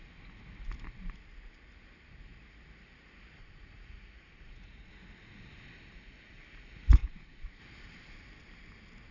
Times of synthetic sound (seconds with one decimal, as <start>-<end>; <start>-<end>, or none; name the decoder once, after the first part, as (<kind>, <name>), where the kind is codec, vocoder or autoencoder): 3.4-4.9 (vocoder, Vocos); 7.0-7.6